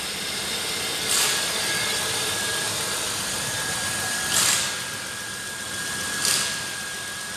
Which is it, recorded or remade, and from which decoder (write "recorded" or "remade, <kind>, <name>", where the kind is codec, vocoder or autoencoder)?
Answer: remade, vocoder, BigVGAN v2